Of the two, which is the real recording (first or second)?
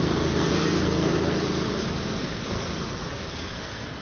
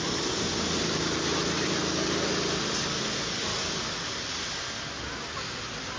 second